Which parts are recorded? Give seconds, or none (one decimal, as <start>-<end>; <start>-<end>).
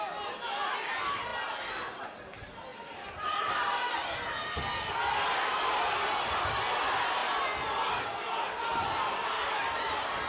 0.0-10.3